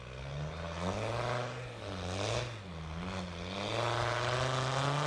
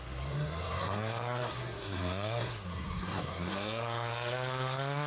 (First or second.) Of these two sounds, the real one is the first